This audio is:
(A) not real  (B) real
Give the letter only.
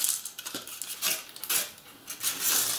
B